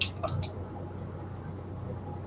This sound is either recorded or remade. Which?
recorded